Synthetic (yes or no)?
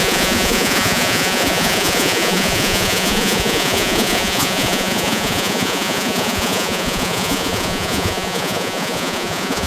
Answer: yes